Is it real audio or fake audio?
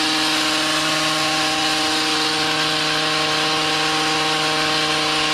real